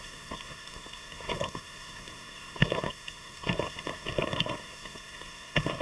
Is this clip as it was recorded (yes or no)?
no